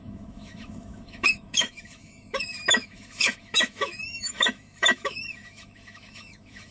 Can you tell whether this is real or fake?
fake